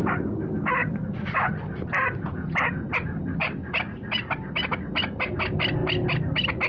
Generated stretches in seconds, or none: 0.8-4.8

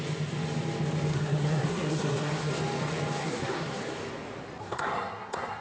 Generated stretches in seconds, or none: 1.1-2.5; 3.2-3.8; 4.6-5.6